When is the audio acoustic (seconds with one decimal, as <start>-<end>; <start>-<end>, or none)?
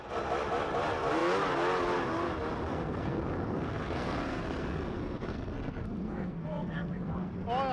0.0-2.7; 7.3-7.7